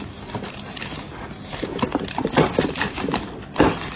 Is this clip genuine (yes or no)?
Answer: yes